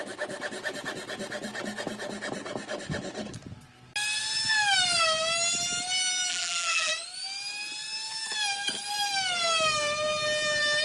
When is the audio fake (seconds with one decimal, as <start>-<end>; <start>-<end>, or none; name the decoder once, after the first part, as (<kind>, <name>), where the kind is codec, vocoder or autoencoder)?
6.3-6.9 (vocoder, BigVGAN v2)